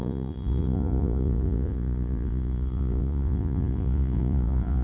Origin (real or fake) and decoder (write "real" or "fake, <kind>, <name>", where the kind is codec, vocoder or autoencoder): fake, vocoder, Vocos